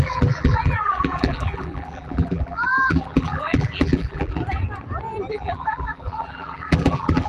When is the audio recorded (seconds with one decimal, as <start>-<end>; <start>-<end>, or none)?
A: 4.4-5.3